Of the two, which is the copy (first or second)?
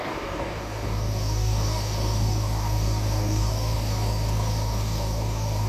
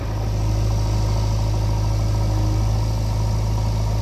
first